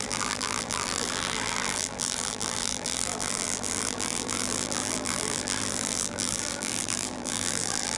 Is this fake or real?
fake